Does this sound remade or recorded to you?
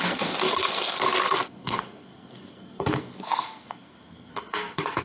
remade